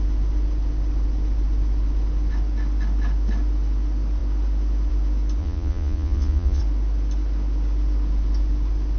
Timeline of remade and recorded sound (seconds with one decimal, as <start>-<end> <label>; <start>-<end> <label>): 0.0-5.4 recorded; 5.4-6.6 remade; 6.6-9.0 recorded

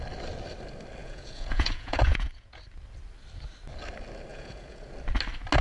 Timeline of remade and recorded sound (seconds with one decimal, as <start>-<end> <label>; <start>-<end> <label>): 0.0-1.0 recorded; 1.0-2.6 remade; 2.6-4.3 recorded; 4.3-4.9 remade; 4.9-5.6 recorded

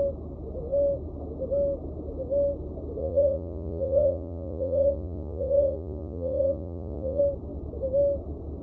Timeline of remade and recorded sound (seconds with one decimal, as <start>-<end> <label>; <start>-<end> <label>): 0.0-3.0 recorded; 3.0-7.2 remade; 7.2-8.6 recorded

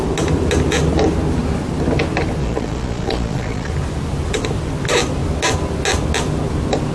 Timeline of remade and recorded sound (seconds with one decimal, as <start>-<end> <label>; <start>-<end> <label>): 0.0-2.4 recorded; 2.4-3.7 remade; 3.7-6.9 recorded